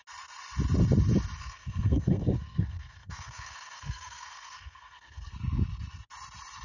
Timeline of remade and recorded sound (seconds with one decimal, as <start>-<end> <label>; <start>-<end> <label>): 0.0-1.4 recorded; 1.4-5.3 remade; 5.3-6.6 recorded